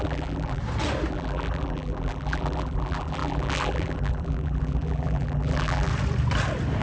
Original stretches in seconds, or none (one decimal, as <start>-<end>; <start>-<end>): 0.6-1.1; 5.9-6.8